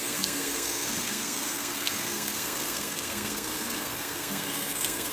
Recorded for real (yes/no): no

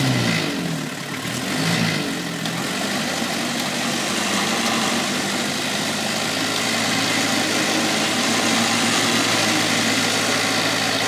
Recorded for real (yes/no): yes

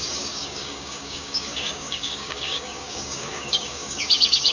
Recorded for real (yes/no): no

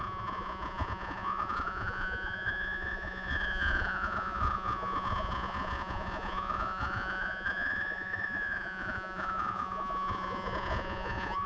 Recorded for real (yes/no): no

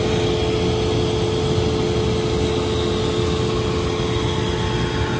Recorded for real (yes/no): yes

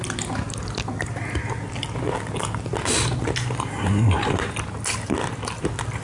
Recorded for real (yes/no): yes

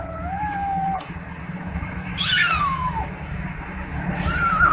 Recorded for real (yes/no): no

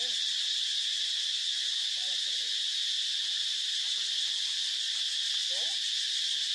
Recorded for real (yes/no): yes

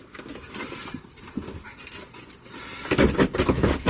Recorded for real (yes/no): yes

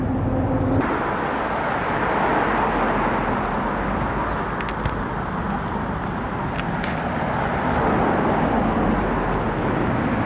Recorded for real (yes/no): yes